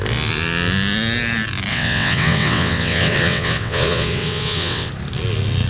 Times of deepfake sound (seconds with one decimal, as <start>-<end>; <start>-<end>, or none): 1.7-4.9